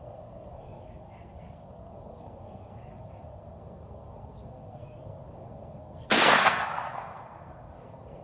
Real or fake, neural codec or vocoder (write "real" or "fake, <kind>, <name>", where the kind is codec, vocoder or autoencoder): fake, codec, SNAC